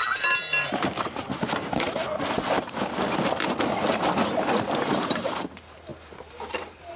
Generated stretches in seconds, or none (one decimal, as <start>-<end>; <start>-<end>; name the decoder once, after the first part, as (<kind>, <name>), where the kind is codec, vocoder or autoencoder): 1.1-2.1 (vocoder, BigVGAN v2); 4.9-7.0